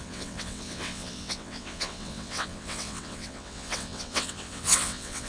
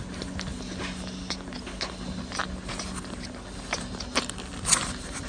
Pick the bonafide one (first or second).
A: second